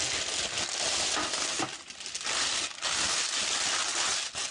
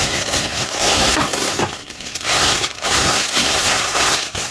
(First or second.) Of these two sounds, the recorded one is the first